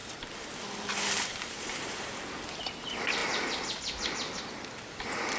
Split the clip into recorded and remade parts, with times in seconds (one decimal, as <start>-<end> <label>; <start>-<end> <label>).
0.0-2.1 remade; 2.1-5.4 recorded